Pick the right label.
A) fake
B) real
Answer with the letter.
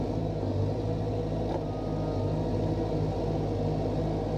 B